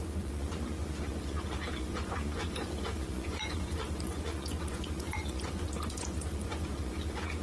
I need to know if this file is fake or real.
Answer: fake